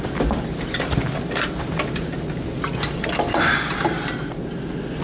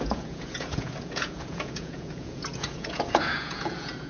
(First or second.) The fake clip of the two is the second